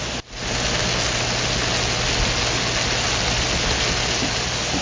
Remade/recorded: recorded